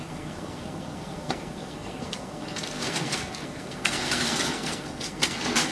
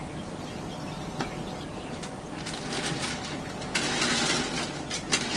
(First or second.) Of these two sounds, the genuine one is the second